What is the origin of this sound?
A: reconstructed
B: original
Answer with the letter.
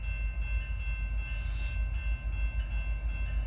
B